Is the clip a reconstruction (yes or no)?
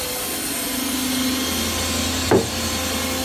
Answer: no